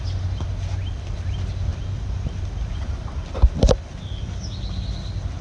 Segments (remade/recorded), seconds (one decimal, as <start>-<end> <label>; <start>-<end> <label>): 0.0-5.4 recorded